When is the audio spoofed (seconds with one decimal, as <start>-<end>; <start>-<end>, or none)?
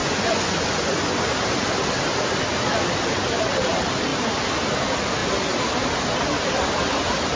0.0-1.3